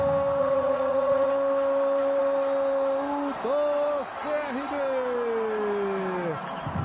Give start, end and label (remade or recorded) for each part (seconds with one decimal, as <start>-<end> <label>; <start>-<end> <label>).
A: 0.0-0.4 recorded; 0.4-1.3 remade; 1.3-6.8 recorded